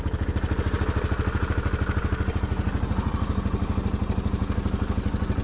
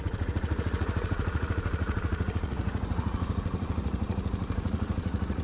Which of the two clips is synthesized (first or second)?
second